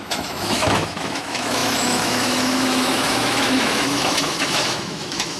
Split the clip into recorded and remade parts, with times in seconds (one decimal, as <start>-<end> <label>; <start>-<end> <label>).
0.0-5.4 remade